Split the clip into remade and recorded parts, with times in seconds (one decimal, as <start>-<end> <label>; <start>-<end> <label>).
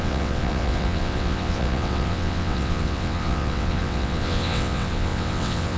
0.0-5.8 remade